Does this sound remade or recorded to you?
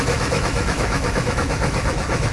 remade